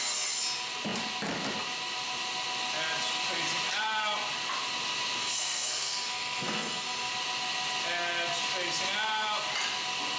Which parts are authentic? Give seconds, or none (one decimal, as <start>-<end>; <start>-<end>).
0.0-5.2; 7.1-10.2